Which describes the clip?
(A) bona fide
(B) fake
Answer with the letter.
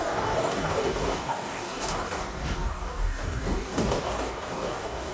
B